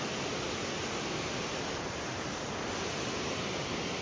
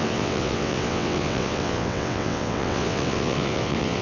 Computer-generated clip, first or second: second